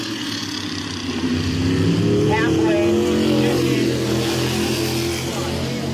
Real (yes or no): yes